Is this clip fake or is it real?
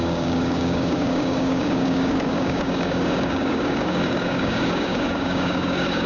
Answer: fake